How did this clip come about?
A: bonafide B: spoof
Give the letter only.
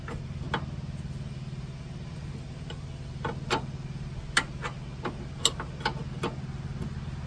A